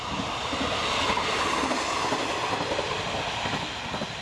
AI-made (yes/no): no